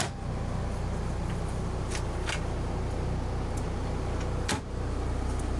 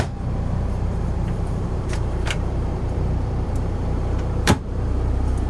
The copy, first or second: second